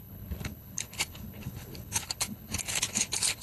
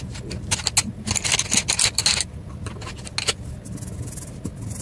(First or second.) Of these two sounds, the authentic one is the second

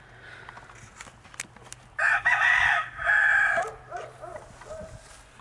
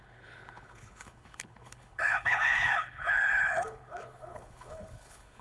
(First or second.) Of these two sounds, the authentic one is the first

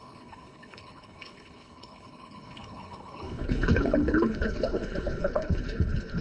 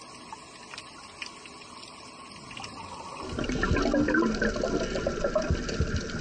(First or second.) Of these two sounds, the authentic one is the second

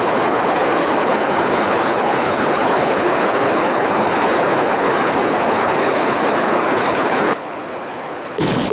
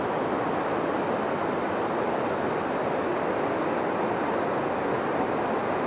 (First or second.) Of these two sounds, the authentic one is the second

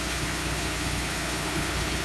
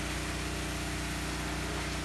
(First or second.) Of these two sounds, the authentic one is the second